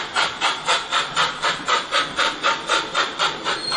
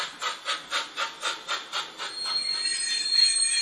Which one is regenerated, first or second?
first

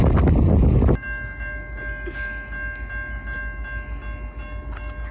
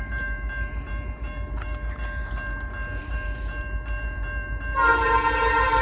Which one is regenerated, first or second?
second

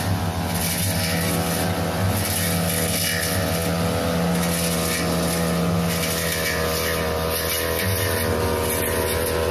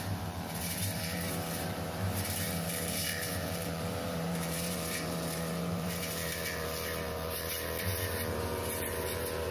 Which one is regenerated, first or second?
second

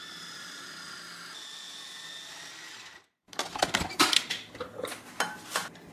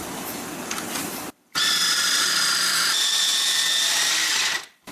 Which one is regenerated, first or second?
second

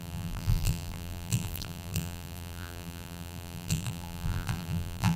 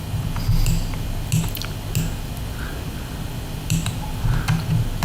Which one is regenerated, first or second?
first